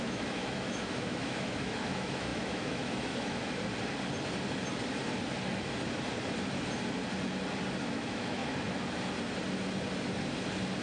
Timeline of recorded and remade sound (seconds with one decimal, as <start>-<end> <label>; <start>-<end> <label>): 0.0-3.4 remade; 3.4-7.8 recorded; 7.8-8.4 remade; 8.4-10.8 recorded